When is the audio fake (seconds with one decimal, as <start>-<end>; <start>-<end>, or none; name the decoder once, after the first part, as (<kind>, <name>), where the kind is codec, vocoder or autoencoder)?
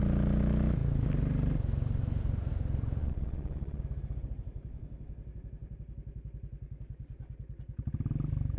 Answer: 3.0-3.8 (vocoder, Vocos)